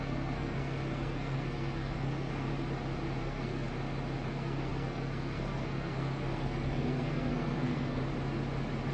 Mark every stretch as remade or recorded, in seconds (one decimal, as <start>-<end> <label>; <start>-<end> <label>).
0.0-2.5 remade; 2.5-3.2 recorded; 3.2-3.7 remade; 3.7-4.3 recorded; 4.3-8.0 remade; 8.0-8.9 recorded